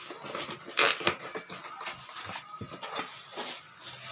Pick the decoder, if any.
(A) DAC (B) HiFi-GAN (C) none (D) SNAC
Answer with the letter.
C